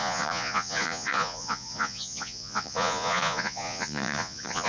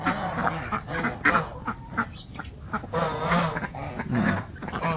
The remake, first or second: first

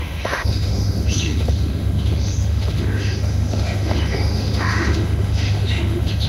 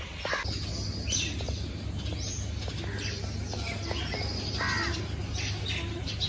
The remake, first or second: first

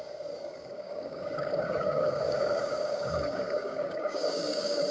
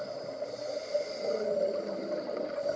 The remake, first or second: first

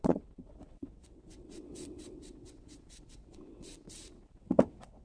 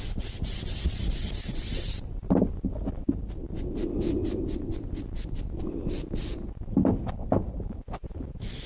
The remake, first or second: first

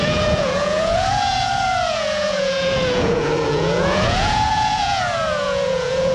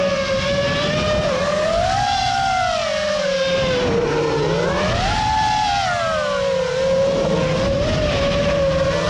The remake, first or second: first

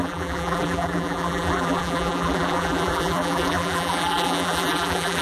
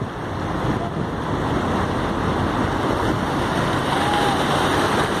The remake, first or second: first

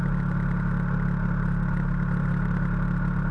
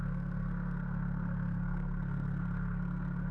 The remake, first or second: second